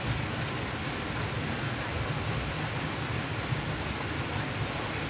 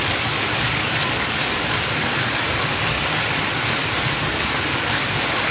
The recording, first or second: first